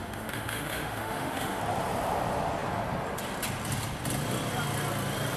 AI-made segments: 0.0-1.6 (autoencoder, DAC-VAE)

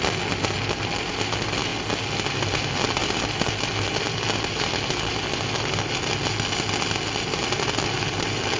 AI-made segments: none

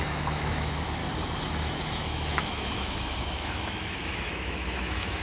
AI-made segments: 0.0-1.0 (autoencoder, DAC-VAE); 1.6-5.2

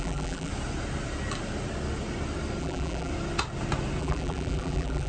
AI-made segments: 0.0-0.5 (vocoder, BigVGAN v2); 2.6-3.1; 4.0-5.1

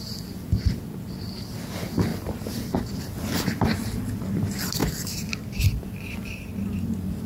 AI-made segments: 4.8-6.6 (vocoder, BigVGAN v2)

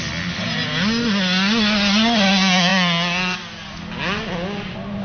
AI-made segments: none

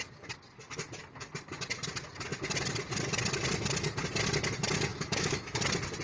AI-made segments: 4.9-5.6 (autoencoder, DAC-VAE)

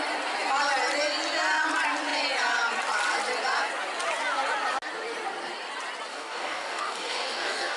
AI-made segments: 6.1-7.8 (codec, DAC)